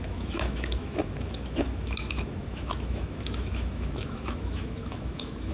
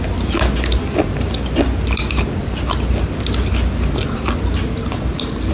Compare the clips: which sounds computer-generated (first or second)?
first